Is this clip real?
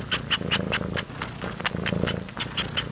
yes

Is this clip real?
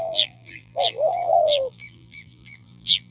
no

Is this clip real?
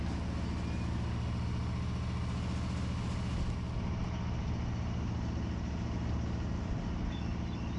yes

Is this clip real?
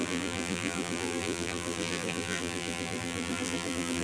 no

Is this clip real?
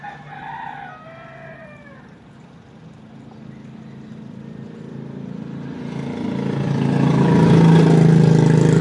yes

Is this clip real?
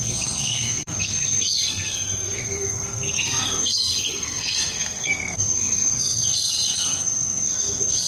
no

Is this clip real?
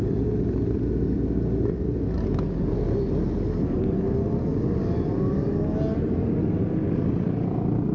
yes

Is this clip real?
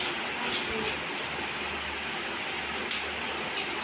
yes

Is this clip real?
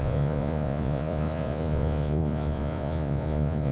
no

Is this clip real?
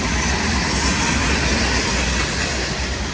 yes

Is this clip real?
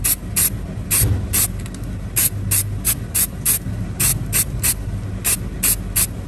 yes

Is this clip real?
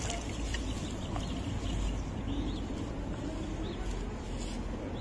yes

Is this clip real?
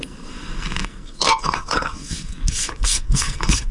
no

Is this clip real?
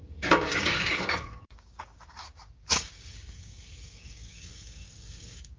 no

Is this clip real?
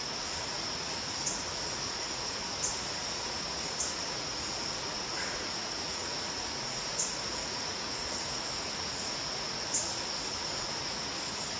no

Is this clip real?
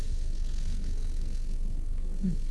no